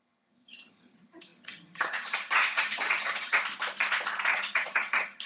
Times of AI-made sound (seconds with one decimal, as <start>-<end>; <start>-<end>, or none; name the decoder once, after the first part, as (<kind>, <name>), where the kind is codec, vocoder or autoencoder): 0.0-3.4 (vocoder, HiFi-GAN); 4.3-5.3